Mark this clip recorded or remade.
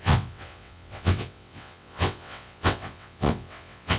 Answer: remade